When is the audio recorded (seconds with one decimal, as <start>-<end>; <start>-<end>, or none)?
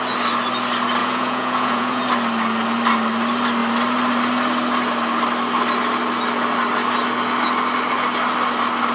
0.0-1.0; 2.0-8.9